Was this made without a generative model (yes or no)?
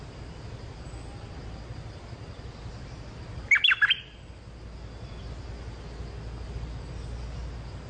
yes